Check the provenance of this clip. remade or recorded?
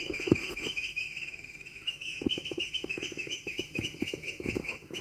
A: remade